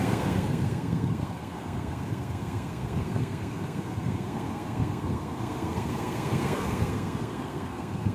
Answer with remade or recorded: remade